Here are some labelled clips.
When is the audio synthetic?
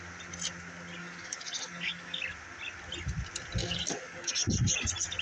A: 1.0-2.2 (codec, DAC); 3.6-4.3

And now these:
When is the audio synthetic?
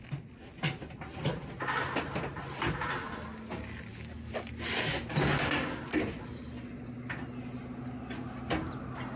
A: 3.9-4.5 (codec, DAC)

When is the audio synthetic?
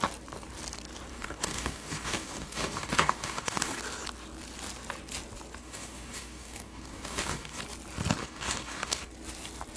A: 1.1-3.8 (codec, DAC); 5.6-7.6; 8.2-9.1